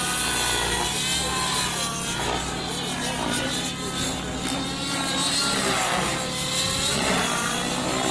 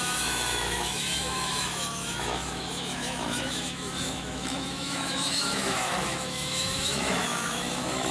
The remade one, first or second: second